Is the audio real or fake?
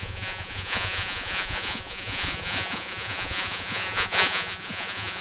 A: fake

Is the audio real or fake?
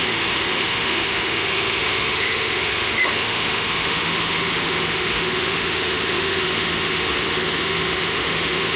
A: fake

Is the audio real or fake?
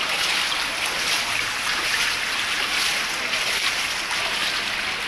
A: real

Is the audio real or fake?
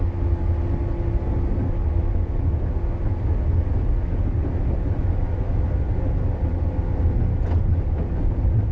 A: real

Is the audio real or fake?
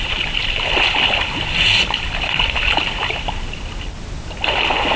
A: real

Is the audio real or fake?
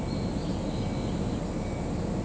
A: real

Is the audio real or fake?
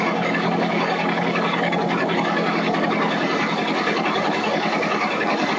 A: fake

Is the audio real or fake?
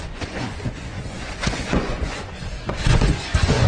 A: fake